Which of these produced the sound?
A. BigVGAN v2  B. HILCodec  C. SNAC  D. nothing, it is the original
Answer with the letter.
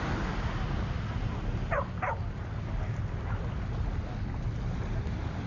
D